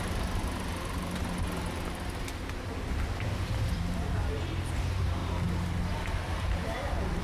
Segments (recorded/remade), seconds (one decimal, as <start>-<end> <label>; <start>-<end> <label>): 0.0-5.2 remade; 5.2-5.9 recorded; 5.9-7.2 remade